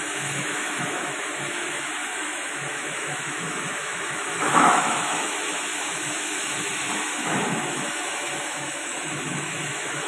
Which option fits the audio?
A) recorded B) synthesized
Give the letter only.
B